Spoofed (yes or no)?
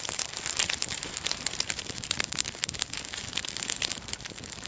yes